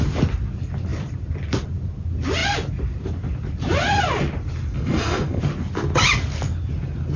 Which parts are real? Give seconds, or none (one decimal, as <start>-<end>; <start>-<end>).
0.0-4.7; 5.4-7.2